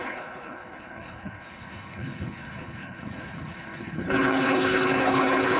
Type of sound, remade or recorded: remade